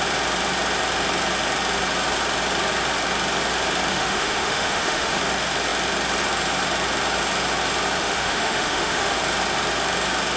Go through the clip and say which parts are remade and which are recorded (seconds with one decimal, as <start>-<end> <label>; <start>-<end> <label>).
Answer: 0.0-3.9 recorded; 3.9-5.2 remade; 5.2-8.0 recorded; 8.0-9.2 remade; 9.2-10.4 recorded